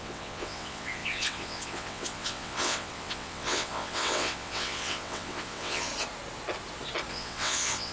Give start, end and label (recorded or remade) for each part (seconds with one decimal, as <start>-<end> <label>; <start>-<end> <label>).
0.0-5.9 remade; 5.9-7.1 recorded; 7.1-7.9 remade

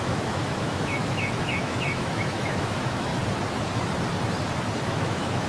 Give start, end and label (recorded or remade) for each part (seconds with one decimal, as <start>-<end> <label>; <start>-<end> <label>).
0.0-3.1 remade; 3.1-4.8 recorded; 4.8-5.5 remade

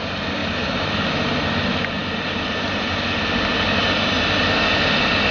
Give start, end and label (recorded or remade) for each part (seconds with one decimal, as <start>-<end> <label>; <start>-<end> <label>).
0.0-0.4 recorded; 0.4-1.1 remade; 1.1-5.3 recorded

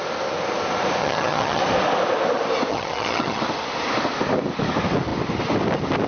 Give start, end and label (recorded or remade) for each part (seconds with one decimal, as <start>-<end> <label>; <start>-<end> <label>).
0.0-1.0 recorded; 1.0-1.6 remade; 1.6-2.7 recorded; 2.7-3.4 remade; 3.4-6.1 recorded

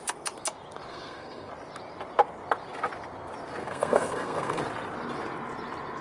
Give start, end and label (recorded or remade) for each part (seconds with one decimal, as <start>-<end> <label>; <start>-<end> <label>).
0.0-0.9 recorded; 0.9-1.5 remade; 1.5-3.6 recorded; 3.6-4.6 remade; 4.6-6.0 recorded

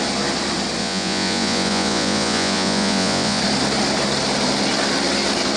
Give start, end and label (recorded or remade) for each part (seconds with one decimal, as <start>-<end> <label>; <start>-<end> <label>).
0.0-0.8 recorded; 0.8-3.4 remade; 3.4-5.6 recorded